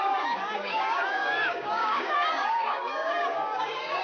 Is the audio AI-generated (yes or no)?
yes